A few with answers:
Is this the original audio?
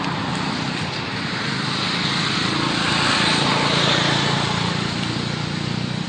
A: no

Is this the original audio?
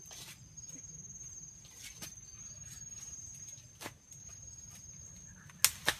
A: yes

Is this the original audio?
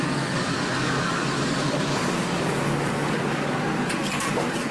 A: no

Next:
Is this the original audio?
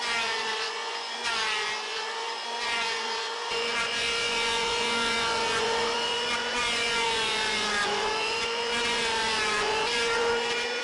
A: no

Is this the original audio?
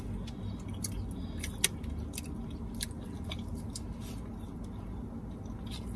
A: yes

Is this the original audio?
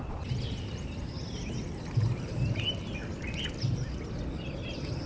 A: yes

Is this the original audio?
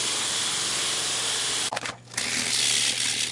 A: yes